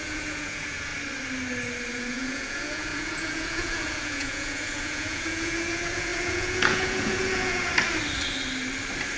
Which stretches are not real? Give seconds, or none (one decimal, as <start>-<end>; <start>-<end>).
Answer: 0.0-0.9; 1.9-7.7